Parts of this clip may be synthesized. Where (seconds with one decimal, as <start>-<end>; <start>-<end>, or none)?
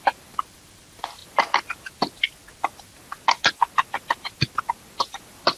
0.0-1.2; 4.6-5.6